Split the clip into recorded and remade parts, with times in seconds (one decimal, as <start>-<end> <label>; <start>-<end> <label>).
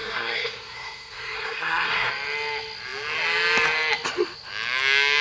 0.0-2.1 remade; 2.1-5.2 recorded